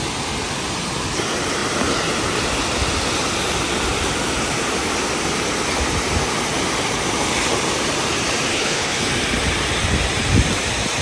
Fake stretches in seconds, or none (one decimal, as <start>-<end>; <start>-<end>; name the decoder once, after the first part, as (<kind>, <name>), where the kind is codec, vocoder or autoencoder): 8.5-9.1 (codec, HILCodec)